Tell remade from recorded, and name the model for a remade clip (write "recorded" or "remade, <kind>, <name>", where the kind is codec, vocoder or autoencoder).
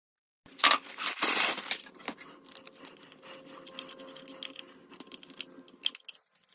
recorded